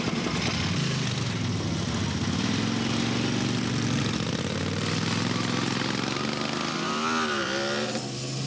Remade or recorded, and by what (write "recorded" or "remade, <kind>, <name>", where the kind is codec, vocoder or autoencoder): recorded